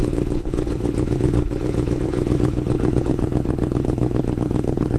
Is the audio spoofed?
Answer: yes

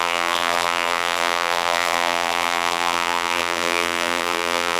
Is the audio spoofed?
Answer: yes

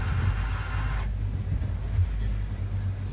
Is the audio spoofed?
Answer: no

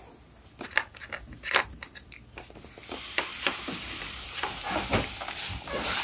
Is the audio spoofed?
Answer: no